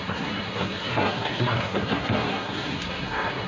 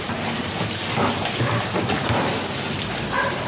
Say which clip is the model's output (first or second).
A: first